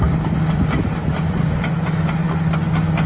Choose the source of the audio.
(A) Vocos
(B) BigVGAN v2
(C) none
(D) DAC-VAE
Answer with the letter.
C